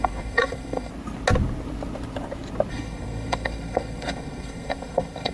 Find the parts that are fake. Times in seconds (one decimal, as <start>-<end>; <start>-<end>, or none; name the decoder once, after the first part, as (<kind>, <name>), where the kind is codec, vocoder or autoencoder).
0.0-0.9 (codec, SNAC); 2.7-5.3

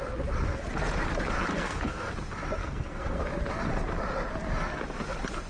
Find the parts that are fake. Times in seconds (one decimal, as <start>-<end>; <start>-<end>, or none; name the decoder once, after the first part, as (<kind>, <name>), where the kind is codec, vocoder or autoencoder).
1.5-2.1 (codec, SNAC); 2.6-3.2

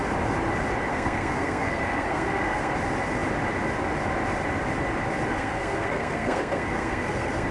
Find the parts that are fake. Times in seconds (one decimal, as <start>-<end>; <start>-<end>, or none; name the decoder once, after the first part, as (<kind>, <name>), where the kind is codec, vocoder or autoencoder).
0.9-2.7 (codec, SNAC); 5.3-7.5